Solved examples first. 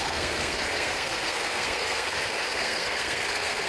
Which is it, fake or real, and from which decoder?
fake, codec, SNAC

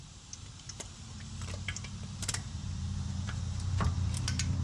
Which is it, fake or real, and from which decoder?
fake, vocoder, BigVGAN v2